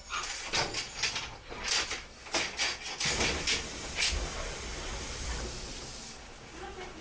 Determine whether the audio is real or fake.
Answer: real